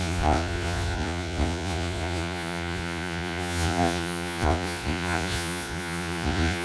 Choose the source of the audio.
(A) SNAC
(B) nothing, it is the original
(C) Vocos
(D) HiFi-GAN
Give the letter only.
C